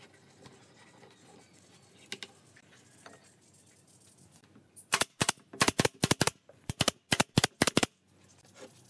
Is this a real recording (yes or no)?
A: yes